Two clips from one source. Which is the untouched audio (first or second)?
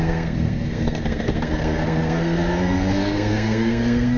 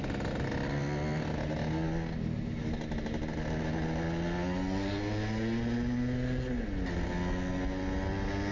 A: second